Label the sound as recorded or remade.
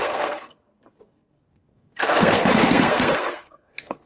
remade